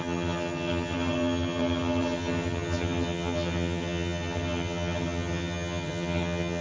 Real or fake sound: fake